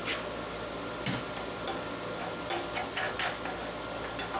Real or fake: real